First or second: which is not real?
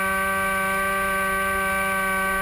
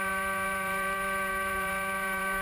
second